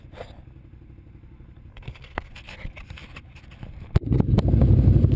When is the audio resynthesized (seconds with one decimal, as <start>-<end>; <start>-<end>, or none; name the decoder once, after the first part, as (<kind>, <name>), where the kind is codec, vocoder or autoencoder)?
1.7-2.3 (codec, SNAC)